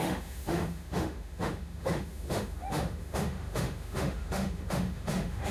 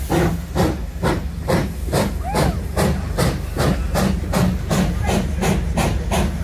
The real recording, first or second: second